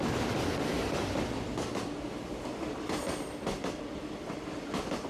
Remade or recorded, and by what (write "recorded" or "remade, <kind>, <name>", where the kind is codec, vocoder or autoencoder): remade, vocoder, BigVGAN v2